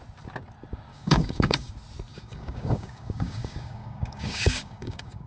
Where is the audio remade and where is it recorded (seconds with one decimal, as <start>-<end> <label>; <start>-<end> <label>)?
0.0-0.9 recorded; 0.9-1.7 remade; 1.7-2.1 recorded; 2.1-5.3 remade